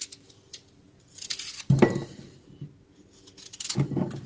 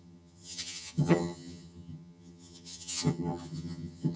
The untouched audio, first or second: first